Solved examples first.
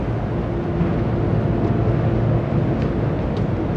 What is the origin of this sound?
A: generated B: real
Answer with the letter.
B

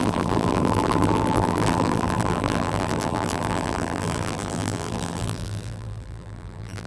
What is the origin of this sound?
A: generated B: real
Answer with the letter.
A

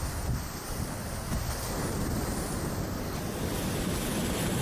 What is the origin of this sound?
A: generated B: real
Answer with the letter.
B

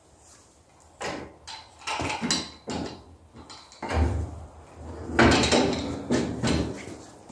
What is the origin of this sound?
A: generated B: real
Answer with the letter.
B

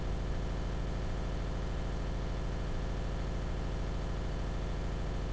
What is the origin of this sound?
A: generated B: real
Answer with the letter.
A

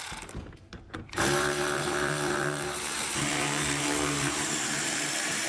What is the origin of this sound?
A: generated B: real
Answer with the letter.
A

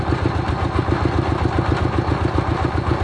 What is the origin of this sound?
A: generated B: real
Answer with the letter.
B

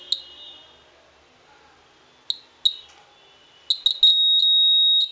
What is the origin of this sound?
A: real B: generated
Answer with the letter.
A